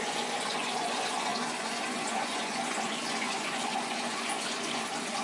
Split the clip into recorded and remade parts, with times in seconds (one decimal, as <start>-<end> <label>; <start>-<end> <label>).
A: 0.0-5.2 remade